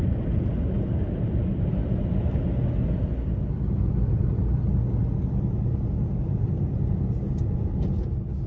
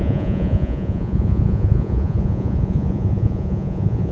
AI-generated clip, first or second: second